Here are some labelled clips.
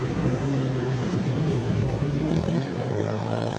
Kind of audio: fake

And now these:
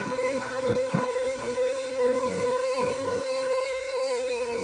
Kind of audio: fake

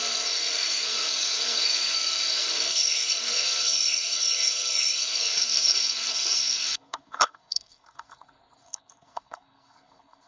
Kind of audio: fake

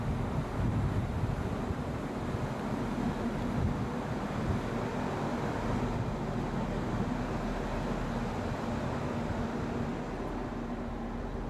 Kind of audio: real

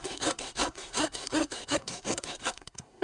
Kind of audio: fake